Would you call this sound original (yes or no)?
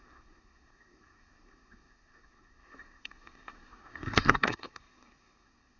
no